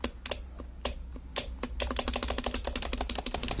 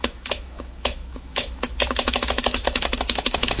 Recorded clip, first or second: first